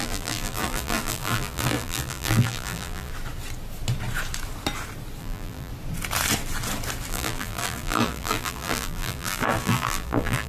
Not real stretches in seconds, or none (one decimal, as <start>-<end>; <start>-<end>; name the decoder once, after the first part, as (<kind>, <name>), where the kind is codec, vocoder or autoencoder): 0.0-3.1 (vocoder, BigVGAN v2); 5.2-5.7; 7.1-10.5